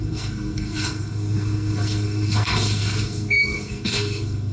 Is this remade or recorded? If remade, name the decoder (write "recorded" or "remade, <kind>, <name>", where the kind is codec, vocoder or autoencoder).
remade, codec, SNAC